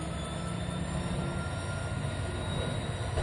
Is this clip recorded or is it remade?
remade